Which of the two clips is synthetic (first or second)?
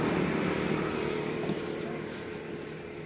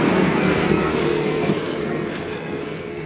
second